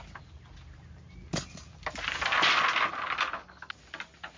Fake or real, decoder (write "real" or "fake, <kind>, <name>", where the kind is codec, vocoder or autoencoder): real